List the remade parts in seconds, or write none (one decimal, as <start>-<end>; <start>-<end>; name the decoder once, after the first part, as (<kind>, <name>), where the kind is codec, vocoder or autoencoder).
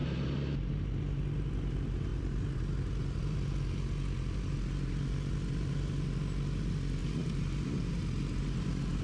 7.0-8.0 (vocoder, BigVGAN v2)